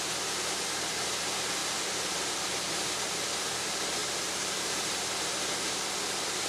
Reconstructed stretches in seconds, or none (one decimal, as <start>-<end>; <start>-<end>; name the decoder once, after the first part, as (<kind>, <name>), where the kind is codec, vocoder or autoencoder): 1.6-2.5 (vocoder, BigVGAN v2); 4.0-5.0